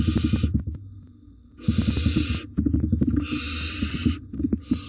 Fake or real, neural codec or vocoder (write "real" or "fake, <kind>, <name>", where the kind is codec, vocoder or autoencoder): real